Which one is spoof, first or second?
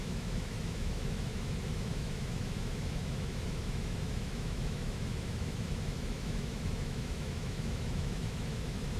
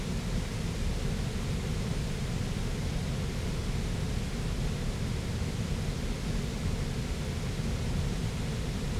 first